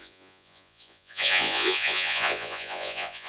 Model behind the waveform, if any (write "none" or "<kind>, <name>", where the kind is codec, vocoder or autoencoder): vocoder, Vocos